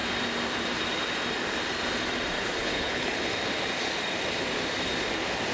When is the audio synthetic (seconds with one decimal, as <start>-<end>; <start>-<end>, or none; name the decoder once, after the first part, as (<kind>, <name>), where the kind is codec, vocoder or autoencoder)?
2.6-3.2 (codec, HILCodec)